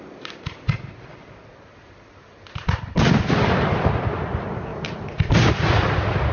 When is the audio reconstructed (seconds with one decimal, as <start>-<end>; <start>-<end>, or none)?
4.7-5.5